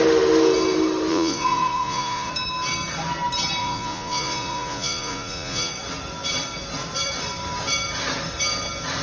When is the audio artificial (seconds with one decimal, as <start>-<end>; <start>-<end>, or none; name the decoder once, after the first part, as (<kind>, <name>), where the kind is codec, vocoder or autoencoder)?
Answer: 1.1-2.3 (vocoder, Vocos); 3.6-5.7